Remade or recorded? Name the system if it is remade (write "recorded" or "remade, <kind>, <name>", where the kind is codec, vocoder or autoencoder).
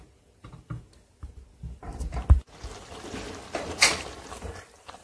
recorded